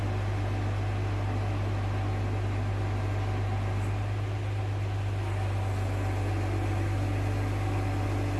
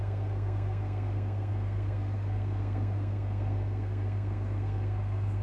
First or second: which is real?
first